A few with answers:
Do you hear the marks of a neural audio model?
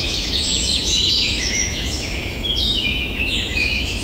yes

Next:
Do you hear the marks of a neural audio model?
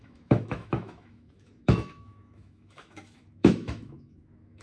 yes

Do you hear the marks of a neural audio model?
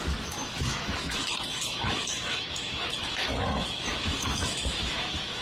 yes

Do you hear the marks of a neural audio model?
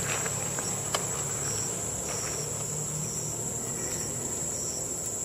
no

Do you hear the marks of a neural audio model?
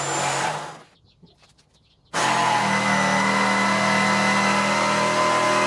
no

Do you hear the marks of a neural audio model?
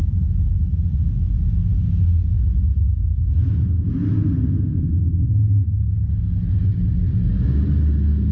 no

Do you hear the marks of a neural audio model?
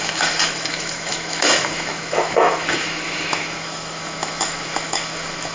yes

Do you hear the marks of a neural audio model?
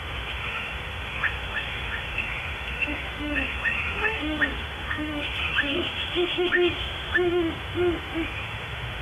yes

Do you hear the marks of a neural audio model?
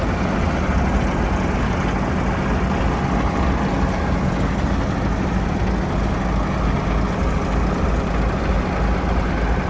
no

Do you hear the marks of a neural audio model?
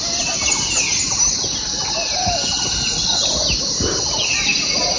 no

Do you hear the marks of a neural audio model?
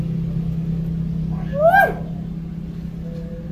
no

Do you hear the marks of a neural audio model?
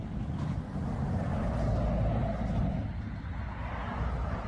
no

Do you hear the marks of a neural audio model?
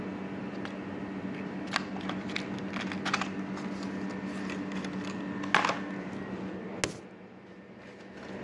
no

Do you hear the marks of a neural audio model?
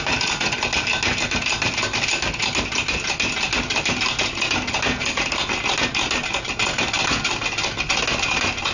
no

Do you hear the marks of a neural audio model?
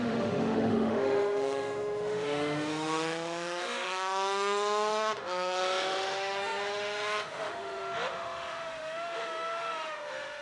yes